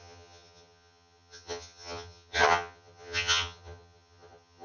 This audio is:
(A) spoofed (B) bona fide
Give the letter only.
A